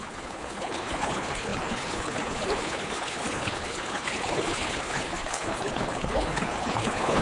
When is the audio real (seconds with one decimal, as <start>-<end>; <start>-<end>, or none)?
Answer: none